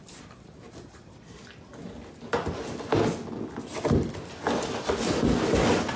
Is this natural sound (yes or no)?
yes